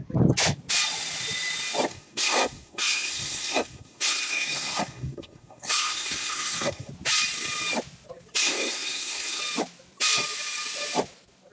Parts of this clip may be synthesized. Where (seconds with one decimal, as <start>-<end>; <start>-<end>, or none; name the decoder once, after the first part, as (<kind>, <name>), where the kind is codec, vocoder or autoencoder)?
1.9-6.9 (codec, SNAC); 8.4-9.4